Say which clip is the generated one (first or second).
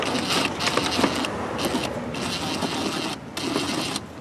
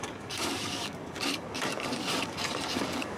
second